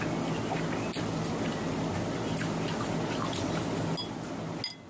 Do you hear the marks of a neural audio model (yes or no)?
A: no